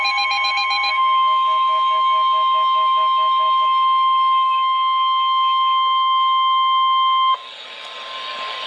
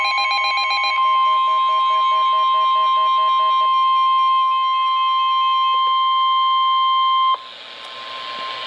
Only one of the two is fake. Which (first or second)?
first